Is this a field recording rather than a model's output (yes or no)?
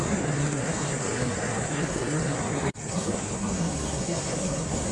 no